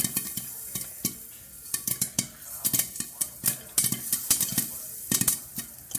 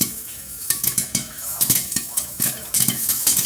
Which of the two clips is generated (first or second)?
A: second